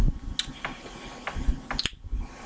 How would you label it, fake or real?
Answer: real